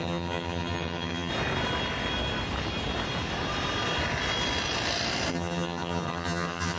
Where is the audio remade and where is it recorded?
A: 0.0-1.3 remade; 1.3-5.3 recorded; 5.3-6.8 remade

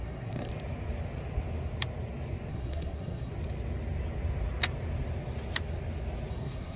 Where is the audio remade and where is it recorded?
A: 0.0-0.5 remade; 0.5-2.5 recorded; 2.5-3.3 remade; 3.3-6.3 recorded; 6.3-6.8 remade

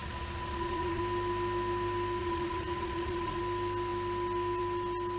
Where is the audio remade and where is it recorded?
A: 0.0-1.0 remade; 1.0-2.2 recorded; 2.2-3.4 remade; 3.4-5.2 recorded

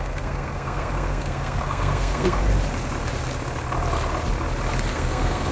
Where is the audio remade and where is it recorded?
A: 0.0-2.4 remade; 2.4-4.9 recorded; 4.9-5.5 remade